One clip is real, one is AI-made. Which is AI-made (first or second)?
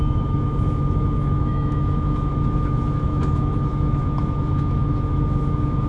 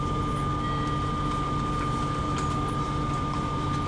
first